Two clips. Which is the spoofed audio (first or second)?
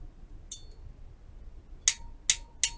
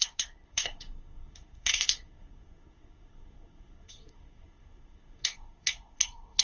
second